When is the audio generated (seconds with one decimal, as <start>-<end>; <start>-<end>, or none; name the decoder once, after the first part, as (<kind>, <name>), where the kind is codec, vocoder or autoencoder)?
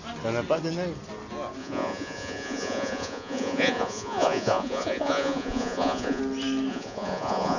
1.6-6.2 (vocoder, Vocos); 6.7-7.6